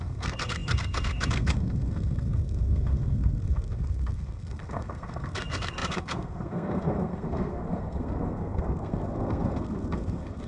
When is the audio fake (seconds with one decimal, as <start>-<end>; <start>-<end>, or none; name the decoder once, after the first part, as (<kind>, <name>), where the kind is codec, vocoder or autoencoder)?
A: 0.0-10.5 (codec, SNAC)